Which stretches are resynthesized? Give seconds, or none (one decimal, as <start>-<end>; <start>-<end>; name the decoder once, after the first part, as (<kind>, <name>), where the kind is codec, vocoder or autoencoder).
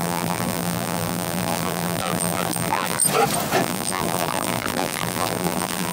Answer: 0.0-3.0 (vocoder, BigVGAN v2); 3.6-5.9